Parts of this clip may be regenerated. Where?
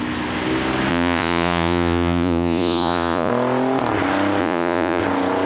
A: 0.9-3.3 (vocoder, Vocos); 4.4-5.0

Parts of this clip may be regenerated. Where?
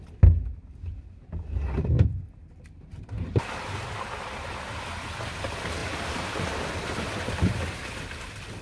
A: none